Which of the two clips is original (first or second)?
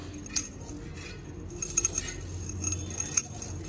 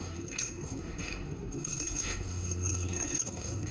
first